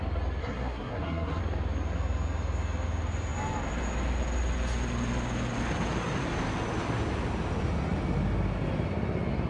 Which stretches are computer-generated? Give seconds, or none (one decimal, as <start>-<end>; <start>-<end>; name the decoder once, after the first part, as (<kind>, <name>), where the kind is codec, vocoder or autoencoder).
0.4-1.4 (codec, SNAC)